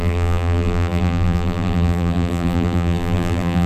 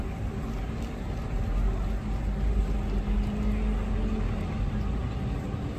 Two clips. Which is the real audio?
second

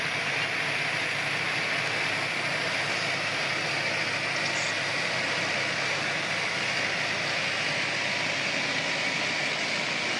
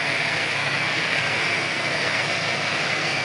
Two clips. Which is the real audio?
first